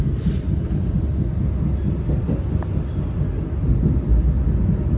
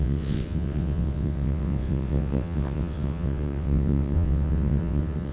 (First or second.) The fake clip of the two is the second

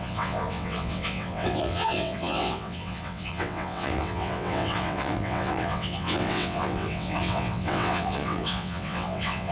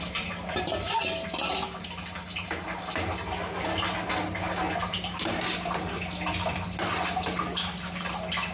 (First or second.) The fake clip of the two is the first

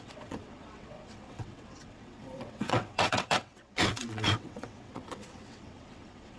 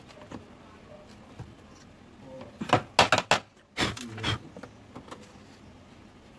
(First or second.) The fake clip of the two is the first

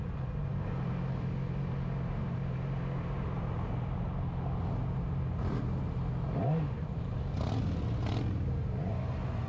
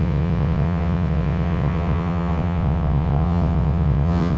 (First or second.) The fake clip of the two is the second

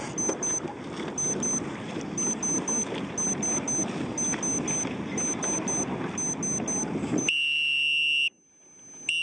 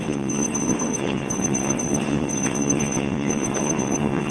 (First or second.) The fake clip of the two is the second